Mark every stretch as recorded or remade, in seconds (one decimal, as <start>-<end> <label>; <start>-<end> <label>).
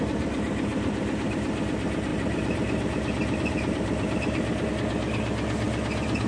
0.0-2.1 recorded; 2.1-4.7 remade; 4.7-6.3 recorded